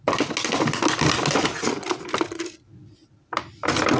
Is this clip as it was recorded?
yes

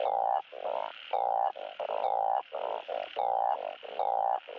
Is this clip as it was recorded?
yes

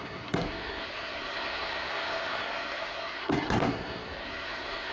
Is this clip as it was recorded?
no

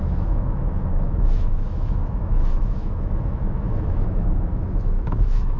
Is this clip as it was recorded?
no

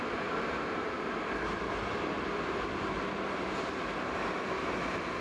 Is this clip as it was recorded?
yes